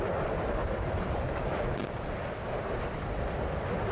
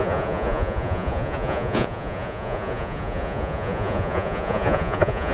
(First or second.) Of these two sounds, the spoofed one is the second